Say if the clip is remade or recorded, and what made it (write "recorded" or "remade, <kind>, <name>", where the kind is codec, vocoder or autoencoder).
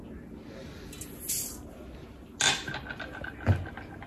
recorded